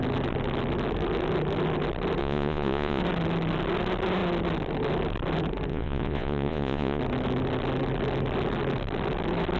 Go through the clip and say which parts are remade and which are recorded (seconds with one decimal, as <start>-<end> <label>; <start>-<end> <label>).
0.0-2.2 recorded; 2.2-3.0 remade; 3.0-5.7 recorded; 5.7-7.0 remade; 7.0-9.6 recorded